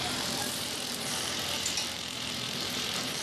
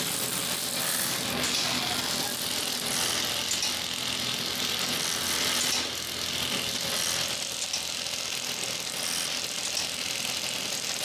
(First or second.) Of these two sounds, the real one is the second